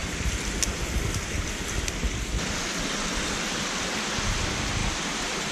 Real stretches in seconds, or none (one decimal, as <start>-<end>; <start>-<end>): 0.0-4.8